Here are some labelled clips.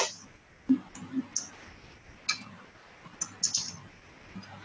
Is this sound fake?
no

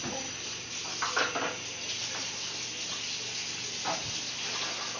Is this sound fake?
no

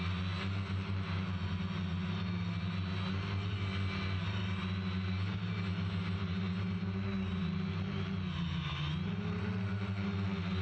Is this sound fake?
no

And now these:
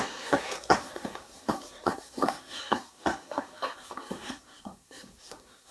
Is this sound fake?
yes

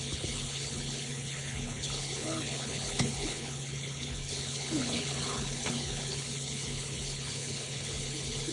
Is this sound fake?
yes